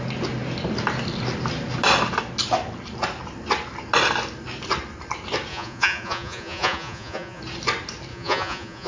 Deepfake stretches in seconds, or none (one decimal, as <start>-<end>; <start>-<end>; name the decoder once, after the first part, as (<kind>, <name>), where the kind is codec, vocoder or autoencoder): 5.5-7.4 (vocoder, Vocos); 8.1-8.9